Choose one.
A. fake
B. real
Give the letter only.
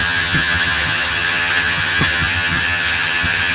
A